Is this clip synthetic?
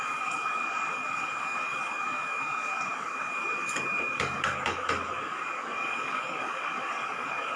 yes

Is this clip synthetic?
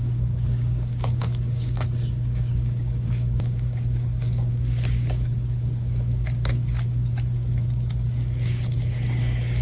yes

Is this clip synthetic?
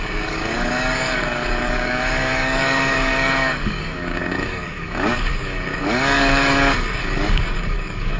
yes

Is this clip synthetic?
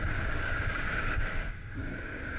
yes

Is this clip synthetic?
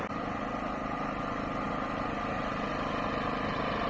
no